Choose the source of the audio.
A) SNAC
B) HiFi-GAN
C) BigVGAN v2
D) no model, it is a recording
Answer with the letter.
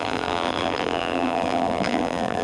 C